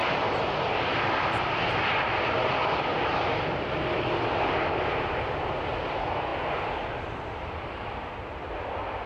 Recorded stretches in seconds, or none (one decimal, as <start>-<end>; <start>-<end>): 0.0-9.1